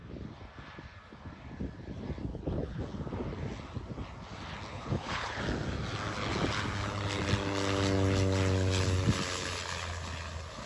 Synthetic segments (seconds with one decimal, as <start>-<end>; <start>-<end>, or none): 2.3-2.8; 4.7-5.4